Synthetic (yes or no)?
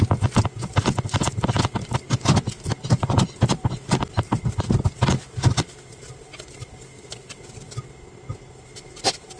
no